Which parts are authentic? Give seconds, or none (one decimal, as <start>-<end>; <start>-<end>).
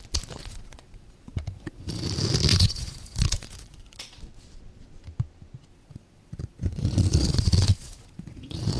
0.0-0.4; 2.0-2.5; 4.2-5.7